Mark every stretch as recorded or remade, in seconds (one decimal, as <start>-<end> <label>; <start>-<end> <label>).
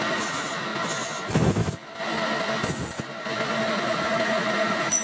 0.0-0.7 remade; 0.7-3.7 recorded; 3.7-5.0 remade